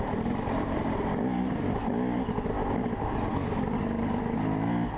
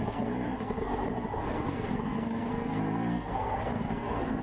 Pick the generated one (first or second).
second